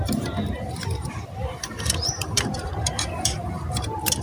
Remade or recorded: remade